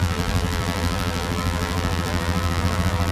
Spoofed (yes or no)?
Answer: yes